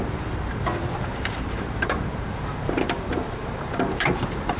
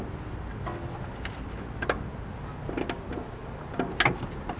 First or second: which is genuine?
second